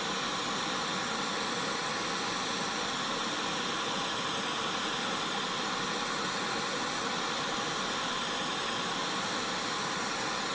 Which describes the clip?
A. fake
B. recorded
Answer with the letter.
B